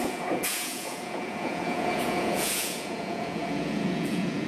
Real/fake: fake